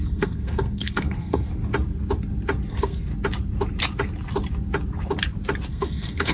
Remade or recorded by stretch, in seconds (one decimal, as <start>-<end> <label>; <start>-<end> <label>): 0.0-1.5 remade; 1.5-2.7 recorded; 2.7-3.1 remade; 3.1-5.7 recorded; 5.7-6.3 remade